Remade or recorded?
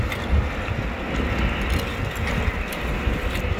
recorded